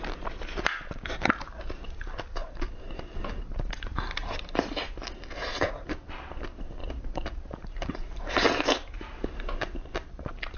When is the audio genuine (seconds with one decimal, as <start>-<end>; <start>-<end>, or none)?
0.0-2.4; 4.9-5.5; 6.1-6.8; 8.2-10.6